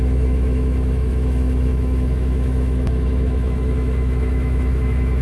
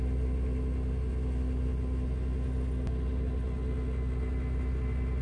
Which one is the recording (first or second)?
second